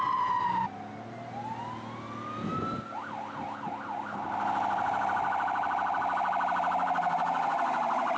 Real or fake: real